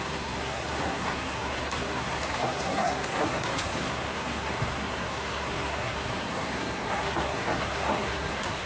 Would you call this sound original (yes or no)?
no